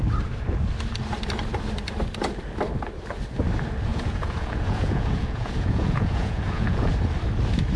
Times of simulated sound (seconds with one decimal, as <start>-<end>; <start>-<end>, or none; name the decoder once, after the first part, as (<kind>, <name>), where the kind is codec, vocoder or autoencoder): 3.9-6.9 (vocoder, Vocos)